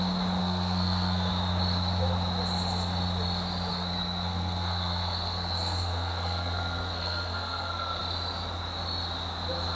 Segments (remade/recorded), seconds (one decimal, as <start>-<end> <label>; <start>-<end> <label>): 0.0-0.4 recorded; 0.4-1.3 remade; 1.3-3.7 recorded; 3.7-8.0 remade; 8.0-9.8 recorded